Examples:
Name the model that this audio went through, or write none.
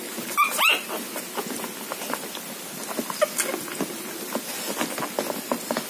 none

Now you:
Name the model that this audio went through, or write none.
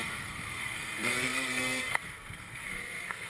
codec, SNAC